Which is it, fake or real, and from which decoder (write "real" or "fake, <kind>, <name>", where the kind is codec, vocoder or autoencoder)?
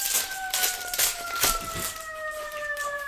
fake, vocoder, BigVGAN v2